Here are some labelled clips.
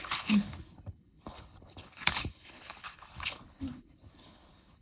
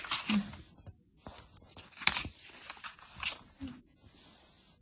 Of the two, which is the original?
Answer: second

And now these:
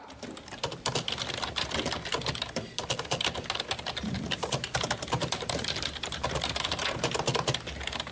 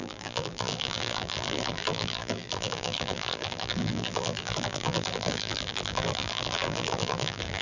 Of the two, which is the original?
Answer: first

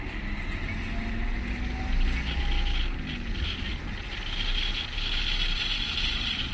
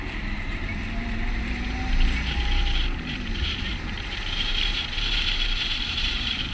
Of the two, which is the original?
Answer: first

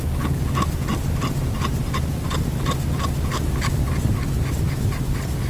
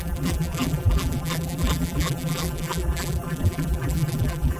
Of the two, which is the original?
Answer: first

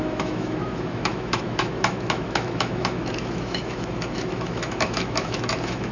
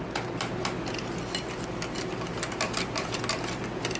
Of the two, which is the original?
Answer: second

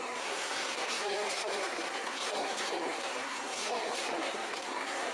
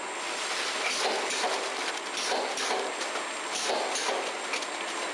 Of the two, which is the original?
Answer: second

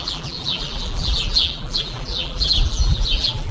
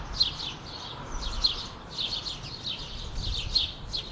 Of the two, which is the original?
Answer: second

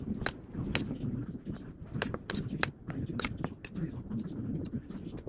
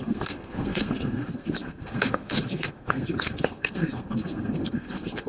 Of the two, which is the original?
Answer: first